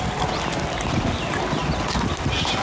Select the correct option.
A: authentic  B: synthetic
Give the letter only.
A